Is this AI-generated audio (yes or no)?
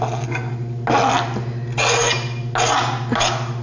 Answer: no